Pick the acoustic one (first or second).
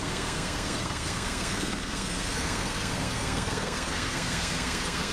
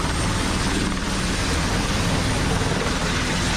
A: second